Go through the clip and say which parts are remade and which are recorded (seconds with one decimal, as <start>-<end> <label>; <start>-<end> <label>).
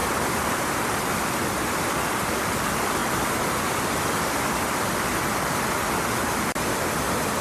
0.0-0.7 remade; 0.7-7.4 recorded